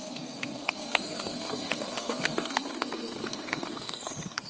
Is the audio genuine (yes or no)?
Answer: no